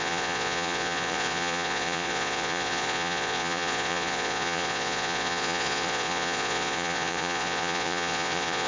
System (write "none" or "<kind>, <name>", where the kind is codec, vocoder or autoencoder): vocoder, Vocos